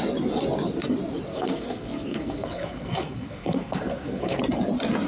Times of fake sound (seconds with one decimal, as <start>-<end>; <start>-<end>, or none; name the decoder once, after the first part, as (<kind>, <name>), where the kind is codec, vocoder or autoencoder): 1.3-4.4 (codec, SNAC)